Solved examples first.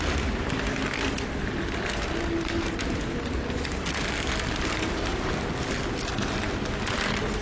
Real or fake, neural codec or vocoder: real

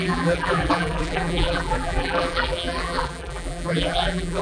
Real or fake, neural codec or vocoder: fake, vocoder, BigVGAN v2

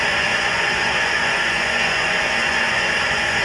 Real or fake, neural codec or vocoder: fake, vocoder, Vocos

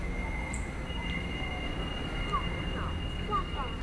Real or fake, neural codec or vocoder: real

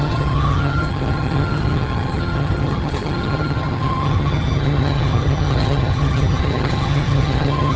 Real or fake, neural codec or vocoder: fake, vocoder, HiFi-GAN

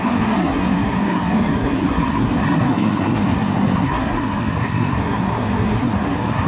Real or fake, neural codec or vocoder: fake, codec, SNAC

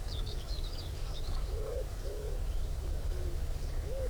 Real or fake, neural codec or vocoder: fake, codec, DAC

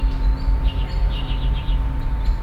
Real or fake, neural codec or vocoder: real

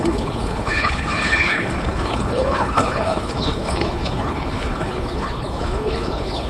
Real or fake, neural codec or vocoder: fake, codec, HILCodec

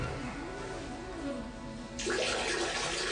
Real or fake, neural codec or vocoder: real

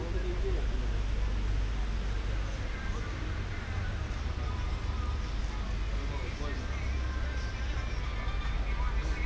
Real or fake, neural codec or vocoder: real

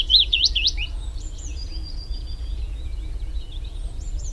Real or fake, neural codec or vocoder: fake, vocoder, Vocos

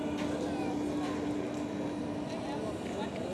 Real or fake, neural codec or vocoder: real